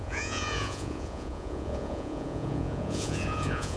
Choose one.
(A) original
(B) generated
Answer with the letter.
B